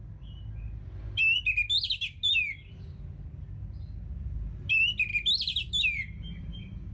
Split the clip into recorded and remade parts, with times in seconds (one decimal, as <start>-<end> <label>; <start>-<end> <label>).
0.0-5.1 recorded; 5.1-5.7 remade; 5.7-6.9 recorded